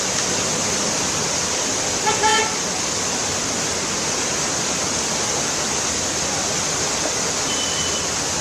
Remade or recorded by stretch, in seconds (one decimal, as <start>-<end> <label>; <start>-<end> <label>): 0.0-8.4 recorded